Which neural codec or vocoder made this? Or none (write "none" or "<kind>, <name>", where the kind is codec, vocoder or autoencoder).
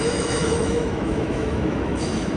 autoencoder, DAC-VAE